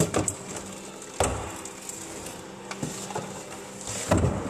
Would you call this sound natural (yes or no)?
yes